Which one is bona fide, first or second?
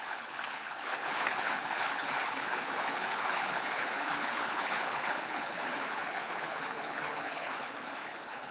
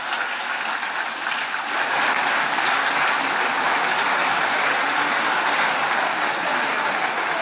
second